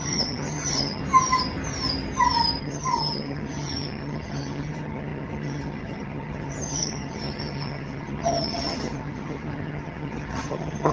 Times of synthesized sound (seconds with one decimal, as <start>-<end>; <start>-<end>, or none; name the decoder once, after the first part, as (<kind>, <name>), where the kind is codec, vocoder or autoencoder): 0.0-1.0 (vocoder, HiFi-GAN); 2.6-10.9